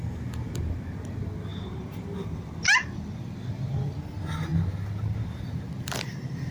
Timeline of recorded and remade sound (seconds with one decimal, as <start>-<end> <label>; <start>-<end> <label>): 0.0-1.5 recorded; 1.5-2.5 remade; 2.5-6.5 recorded